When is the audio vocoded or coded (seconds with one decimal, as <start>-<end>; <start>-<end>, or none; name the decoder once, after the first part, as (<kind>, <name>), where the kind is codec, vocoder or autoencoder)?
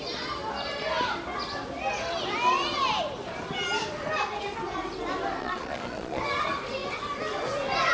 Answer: 5.4-6.2 (vocoder, Vocos)